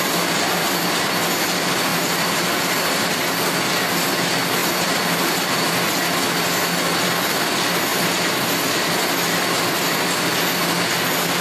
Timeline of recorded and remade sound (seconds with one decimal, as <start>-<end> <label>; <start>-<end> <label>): 0.0-1.9 recorded; 1.9-3.1 remade; 3.1-4.6 recorded; 4.6-5.7 remade; 5.7-11.4 recorded